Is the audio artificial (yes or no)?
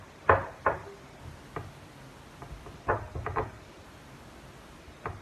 no